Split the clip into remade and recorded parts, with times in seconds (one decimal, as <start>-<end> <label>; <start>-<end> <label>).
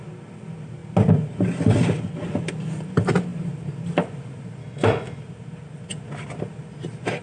0.0-4.6 recorded; 4.6-5.2 remade; 5.2-7.2 recorded